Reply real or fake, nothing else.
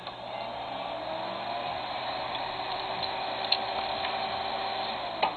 real